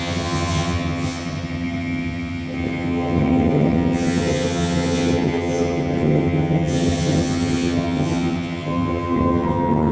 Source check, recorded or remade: remade